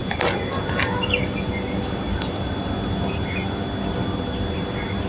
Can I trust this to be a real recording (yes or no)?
yes